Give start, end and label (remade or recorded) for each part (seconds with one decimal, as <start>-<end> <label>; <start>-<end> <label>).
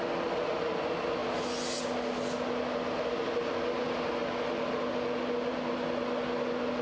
0.0-6.8 recorded